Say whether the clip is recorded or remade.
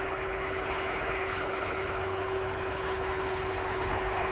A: remade